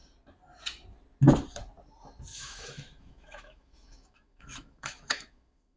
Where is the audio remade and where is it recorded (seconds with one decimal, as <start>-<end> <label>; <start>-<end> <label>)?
0.0-2.3 recorded; 2.3-5.8 remade